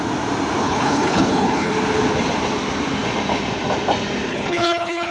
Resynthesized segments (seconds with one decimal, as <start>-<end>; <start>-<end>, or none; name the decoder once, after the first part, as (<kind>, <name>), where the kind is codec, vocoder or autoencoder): 0.6-1.7 (codec, HILCodec); 4.3-5.1